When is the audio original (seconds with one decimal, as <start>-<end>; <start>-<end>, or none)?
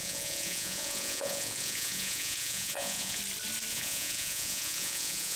3.2-3.7